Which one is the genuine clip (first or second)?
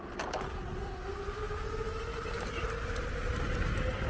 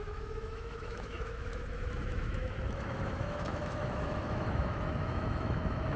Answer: first